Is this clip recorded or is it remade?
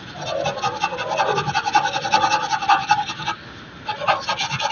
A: recorded